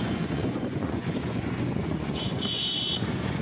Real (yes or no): no